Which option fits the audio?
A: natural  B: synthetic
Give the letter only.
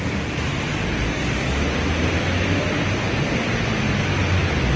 A